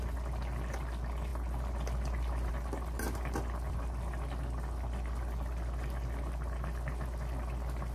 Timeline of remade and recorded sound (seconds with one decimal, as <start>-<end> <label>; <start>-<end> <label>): 0.0-7.9 recorded